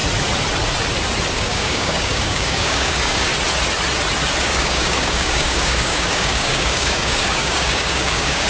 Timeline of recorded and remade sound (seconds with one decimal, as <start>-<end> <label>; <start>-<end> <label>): 0.0-1.3 recorded; 1.3-3.3 remade; 3.3-4.4 recorded; 4.4-8.5 remade